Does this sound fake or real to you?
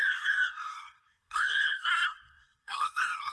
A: fake